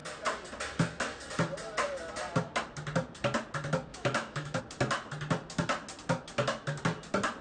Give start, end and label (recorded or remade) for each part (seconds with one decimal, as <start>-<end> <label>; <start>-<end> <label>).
0.0-3.9 recorded; 3.9-4.6 remade; 4.6-7.4 recorded